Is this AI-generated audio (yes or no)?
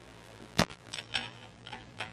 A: yes